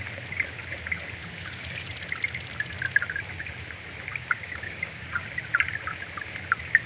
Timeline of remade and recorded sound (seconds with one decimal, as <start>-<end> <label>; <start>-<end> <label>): 0.0-1.2 recorded; 1.2-1.9 remade; 1.9-4.1 recorded; 4.1-5.3 remade; 5.3-6.9 recorded